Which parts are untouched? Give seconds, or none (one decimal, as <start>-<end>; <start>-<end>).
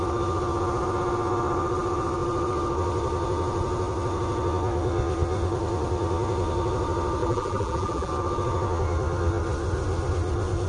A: 0.0-7.2; 8.1-10.7